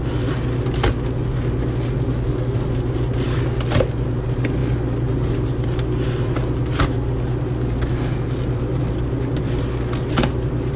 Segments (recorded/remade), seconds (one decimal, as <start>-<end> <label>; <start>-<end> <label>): 0.0-10.8 recorded

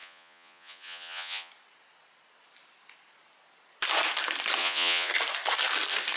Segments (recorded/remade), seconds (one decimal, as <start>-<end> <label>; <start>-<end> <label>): 0.0-1.5 remade; 1.5-4.6 recorded; 4.6-5.1 remade; 5.1-6.2 recorded

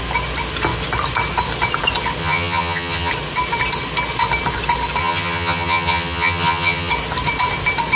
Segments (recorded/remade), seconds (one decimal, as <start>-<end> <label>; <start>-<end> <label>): 0.0-2.2 recorded; 2.2-3.1 remade; 3.1-5.0 recorded; 5.0-6.9 remade; 6.9-8.0 recorded

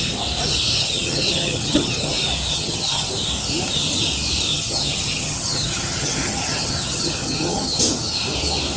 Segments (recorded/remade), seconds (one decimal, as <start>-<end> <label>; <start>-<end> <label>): 0.0-0.8 recorded; 0.8-2.1 remade; 2.1-2.5 recorded; 2.5-3.1 remade; 3.1-4.5 recorded; 4.5-7.8 remade; 7.8-8.8 recorded